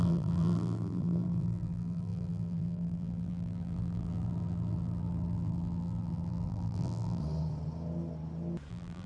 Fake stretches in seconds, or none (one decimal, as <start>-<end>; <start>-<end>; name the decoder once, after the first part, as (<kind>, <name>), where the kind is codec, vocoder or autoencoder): 0.0-7.2 (vocoder, BigVGAN v2); 8.7-9.1